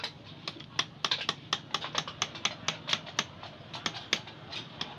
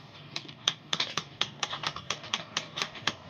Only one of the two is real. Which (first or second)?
first